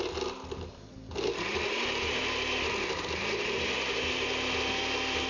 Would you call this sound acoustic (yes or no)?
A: yes